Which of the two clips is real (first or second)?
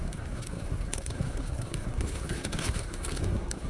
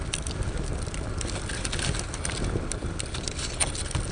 second